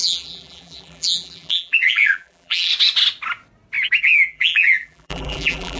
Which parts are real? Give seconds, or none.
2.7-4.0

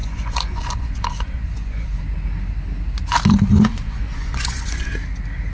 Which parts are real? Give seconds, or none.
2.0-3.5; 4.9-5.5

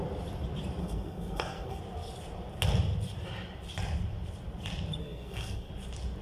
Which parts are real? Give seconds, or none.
0.0-0.8; 1.8-5.0; 5.7-6.2

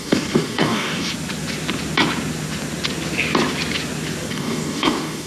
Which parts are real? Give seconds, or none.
1.1-4.3

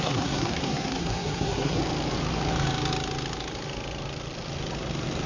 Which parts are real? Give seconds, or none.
1.8-5.3

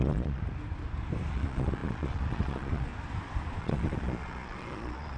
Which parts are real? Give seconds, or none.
0.4-1.3; 2.9-3.6